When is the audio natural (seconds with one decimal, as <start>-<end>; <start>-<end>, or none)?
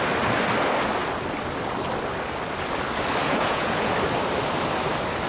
0.0-3.2; 3.9-5.3